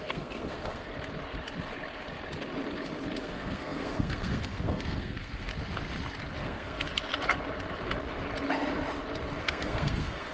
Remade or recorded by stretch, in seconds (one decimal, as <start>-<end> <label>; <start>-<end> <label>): 0.0-0.9 remade; 0.9-3.2 recorded; 3.2-5.5 remade; 5.5-6.4 recorded; 6.4-6.9 remade; 6.9-9.4 recorded; 9.4-10.3 remade